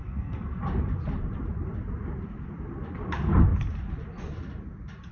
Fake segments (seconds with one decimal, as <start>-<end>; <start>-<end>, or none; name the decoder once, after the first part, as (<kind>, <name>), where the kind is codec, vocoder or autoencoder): 0.0-0.6 (codec, SNAC)